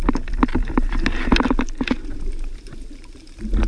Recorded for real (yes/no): yes